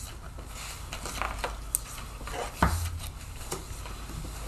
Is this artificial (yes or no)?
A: no